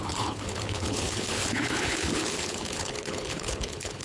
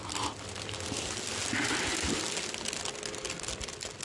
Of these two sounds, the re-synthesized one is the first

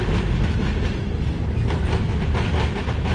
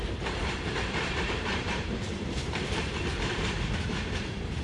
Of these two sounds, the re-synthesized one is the second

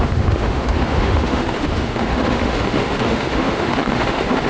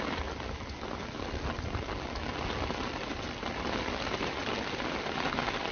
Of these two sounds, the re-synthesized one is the first